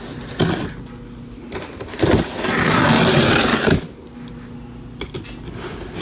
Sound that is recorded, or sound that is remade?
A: recorded